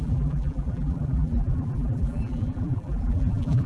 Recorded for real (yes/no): no